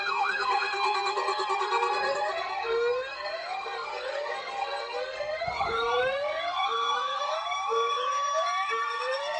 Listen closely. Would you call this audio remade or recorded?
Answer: remade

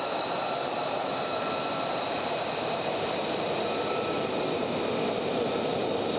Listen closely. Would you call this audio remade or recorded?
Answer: recorded